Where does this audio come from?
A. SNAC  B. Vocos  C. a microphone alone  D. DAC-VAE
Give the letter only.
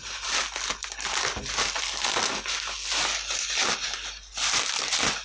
C